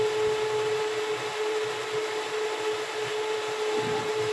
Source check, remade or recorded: recorded